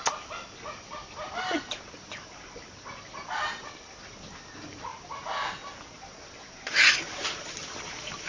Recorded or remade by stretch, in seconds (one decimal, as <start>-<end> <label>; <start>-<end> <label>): 0.0-8.3 recorded